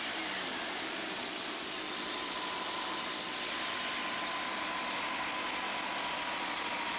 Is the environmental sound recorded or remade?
recorded